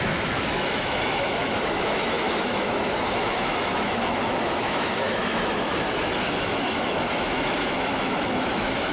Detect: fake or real fake